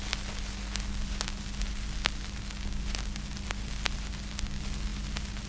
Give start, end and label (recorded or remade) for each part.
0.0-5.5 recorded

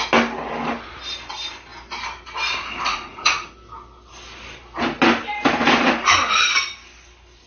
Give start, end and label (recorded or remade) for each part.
0.0-2.9 recorded; 2.9-3.5 remade; 3.5-7.5 recorded

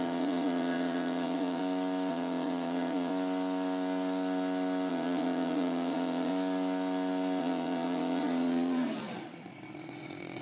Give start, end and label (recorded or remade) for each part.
0.0-1.6 remade; 1.6-2.1 recorded; 2.1-3.1 remade; 3.1-4.9 recorded; 4.9-6.3 remade; 6.3-7.4 recorded; 7.4-10.4 remade